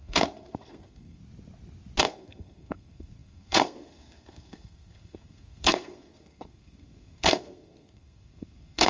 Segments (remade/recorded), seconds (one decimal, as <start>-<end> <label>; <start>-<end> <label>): 0.0-1.2 remade; 1.2-2.0 recorded; 2.0-8.9 remade